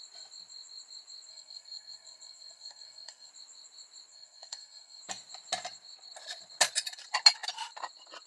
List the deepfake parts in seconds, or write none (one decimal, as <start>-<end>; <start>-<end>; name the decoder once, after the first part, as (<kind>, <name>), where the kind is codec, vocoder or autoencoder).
1.3-3.3 (codec, SNAC); 4.1-5.0